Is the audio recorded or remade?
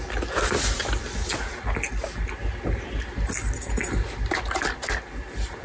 recorded